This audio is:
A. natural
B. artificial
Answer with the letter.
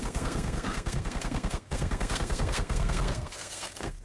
B